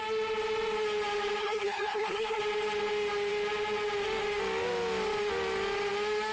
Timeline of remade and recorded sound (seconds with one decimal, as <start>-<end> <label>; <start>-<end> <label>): 0.0-1.4 recorded; 1.4-2.4 remade; 2.4-6.3 recorded